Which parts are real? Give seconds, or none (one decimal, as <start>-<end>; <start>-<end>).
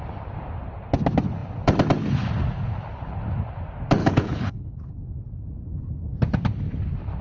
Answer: 0.0-4.0; 4.9-7.2